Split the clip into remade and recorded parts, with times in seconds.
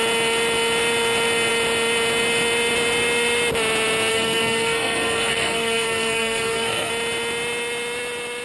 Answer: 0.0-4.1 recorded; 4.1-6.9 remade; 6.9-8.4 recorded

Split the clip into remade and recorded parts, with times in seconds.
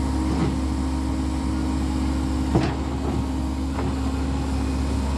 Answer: 0.0-5.2 recorded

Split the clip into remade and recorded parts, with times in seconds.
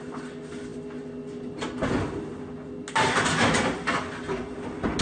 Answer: 0.0-5.0 recorded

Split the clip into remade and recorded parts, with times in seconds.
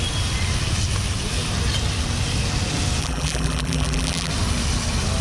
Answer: 0.0-3.0 recorded; 3.0-4.3 remade; 4.3-5.2 recorded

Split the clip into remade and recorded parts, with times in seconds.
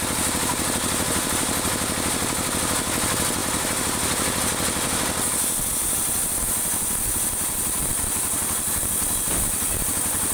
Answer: 0.0-10.3 recorded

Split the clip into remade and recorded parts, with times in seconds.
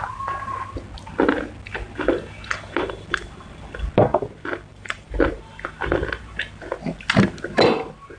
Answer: 0.0-4.7 recorded; 4.7-5.4 remade; 5.4-8.2 recorded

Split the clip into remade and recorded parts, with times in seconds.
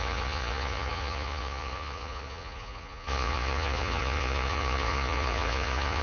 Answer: 0.0-6.0 remade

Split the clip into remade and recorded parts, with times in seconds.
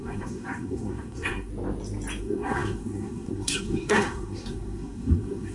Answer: 0.0-1.5 remade; 1.5-2.2 recorded; 2.2-5.5 remade